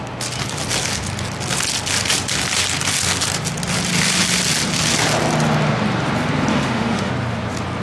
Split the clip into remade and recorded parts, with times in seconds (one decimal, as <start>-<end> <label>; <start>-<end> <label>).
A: 0.0-6.5 recorded; 6.5-7.1 remade; 7.1-7.8 recorded